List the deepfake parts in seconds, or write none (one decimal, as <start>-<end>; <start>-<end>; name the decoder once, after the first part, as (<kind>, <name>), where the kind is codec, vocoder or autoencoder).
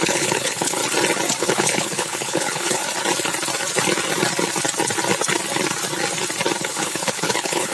0.0-0.8 (codec, HILCodec); 1.4-2.8; 6.6-7.7